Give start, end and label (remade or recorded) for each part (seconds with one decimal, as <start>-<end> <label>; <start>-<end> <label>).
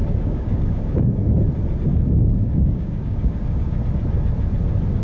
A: 0.0-1.3 remade; 1.3-1.9 recorded; 1.9-3.8 remade; 3.8-5.0 recorded